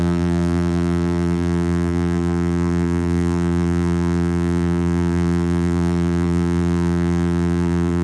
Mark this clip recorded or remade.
remade